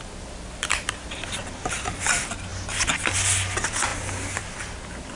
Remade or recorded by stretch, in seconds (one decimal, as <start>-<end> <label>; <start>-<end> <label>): 0.0-5.2 recorded